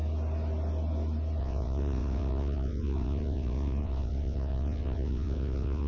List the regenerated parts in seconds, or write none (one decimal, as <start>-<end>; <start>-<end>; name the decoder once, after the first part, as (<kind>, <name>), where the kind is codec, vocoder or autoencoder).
1.4-5.9 (vocoder, WaveNeXt)